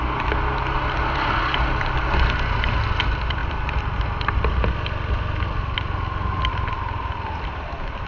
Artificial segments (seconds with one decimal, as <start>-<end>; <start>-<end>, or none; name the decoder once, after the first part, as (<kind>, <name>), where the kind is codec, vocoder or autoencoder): none

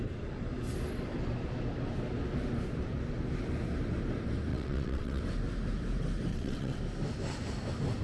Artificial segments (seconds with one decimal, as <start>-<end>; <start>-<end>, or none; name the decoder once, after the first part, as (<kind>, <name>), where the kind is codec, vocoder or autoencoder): 4.5-5.2 (vocoder, WaveNeXt); 6.3-6.8